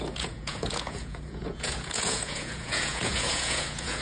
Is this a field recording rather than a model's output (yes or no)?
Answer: no